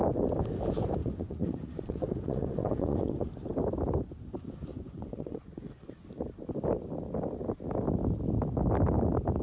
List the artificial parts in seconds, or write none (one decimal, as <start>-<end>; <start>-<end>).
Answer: 1.0-3.3; 4.7-5.9